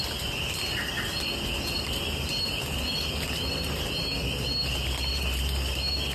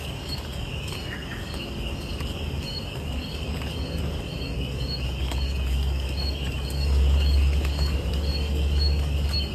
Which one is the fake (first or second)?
second